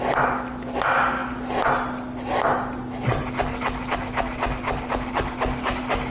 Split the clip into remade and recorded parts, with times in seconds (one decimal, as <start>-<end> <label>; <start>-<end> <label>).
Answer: 0.0-6.1 recorded